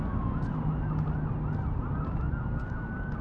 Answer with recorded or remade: recorded